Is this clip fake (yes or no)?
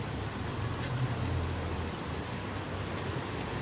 yes